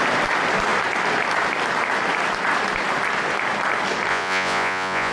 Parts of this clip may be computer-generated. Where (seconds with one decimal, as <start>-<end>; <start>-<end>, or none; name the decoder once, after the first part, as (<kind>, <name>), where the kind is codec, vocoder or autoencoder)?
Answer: 4.1-5.1 (vocoder, Vocos)